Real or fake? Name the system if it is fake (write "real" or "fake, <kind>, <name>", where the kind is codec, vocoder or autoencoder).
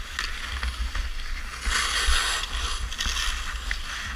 real